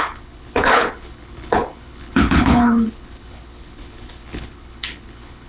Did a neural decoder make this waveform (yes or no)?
yes